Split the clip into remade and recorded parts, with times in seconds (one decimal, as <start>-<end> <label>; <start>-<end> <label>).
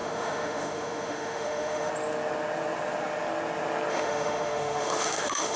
0.0-1.9 remade; 1.9-3.9 recorded; 3.9-5.6 remade